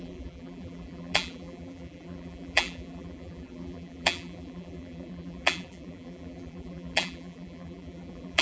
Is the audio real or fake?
fake